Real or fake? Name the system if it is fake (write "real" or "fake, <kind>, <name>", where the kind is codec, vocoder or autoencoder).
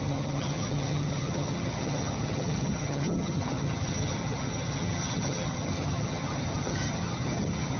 fake, vocoder, HiFi-GAN